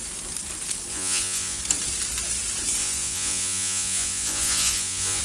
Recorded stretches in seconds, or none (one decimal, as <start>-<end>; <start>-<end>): 0.0-0.9; 1.6-2.8